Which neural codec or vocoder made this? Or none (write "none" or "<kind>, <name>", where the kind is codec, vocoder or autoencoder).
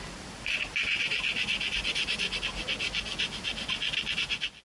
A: none